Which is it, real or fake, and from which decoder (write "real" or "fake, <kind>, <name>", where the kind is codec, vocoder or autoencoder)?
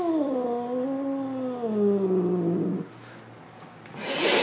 real